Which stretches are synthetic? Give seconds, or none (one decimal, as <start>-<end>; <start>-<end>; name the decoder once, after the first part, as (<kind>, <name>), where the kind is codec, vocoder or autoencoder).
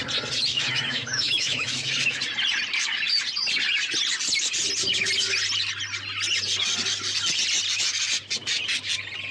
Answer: 0.5-2.2 (autoencoder, DAC-VAE)